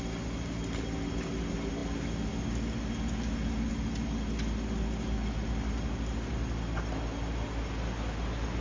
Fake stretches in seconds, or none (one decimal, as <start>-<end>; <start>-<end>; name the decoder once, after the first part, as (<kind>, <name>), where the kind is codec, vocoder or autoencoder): none